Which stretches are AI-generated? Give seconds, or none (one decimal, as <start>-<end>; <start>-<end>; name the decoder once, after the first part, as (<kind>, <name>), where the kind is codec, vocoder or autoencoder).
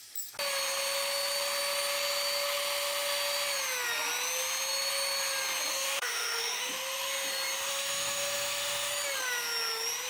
5.7-6.7 (autoencoder, DAC-VAE); 7.7-8.9